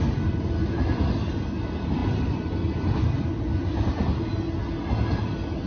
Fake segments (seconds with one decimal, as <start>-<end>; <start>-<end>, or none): none